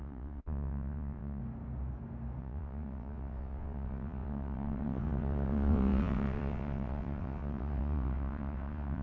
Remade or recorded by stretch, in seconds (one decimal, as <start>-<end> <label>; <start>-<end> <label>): 0.0-1.4 remade; 1.4-2.4 recorded; 2.4-9.0 remade